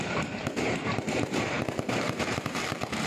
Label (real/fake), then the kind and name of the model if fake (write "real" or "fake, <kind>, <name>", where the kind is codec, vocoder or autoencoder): fake, vocoder, BigVGAN v2